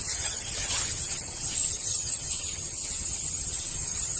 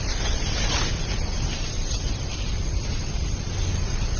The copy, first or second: first